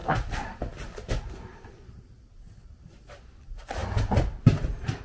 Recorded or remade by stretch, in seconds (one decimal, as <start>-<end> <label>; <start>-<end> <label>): 0.0-5.0 recorded